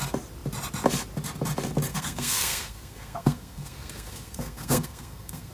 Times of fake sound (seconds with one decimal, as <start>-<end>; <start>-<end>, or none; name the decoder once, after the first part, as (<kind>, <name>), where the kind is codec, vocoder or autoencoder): 1.9-5.5 (codec, SNAC)